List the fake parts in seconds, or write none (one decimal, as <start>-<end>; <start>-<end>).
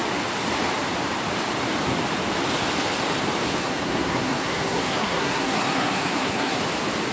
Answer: 3.6-6.6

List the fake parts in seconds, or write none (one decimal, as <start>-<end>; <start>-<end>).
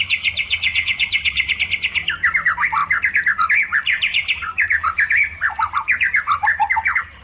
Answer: 0.5-1.5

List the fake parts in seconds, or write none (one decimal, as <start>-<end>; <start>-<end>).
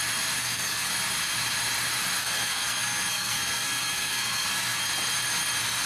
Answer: 0.4-0.9; 2.2-4.8